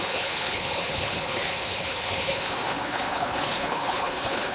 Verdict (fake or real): fake